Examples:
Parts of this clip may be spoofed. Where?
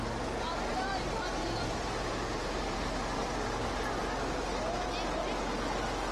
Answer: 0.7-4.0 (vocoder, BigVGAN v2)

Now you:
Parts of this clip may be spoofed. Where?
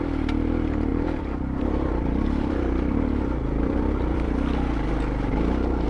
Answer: 0.9-4.4 (vocoder, BigVGAN v2)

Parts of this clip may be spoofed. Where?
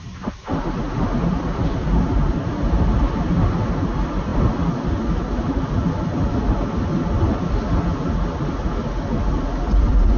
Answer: none